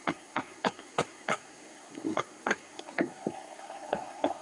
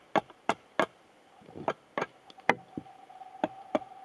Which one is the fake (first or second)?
first